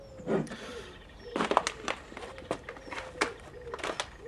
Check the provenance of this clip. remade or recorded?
recorded